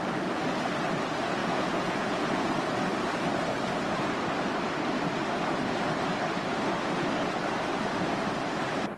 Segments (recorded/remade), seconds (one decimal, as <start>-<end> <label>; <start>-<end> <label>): 0.0-1.4 recorded; 1.4-2.5 remade; 2.5-9.0 recorded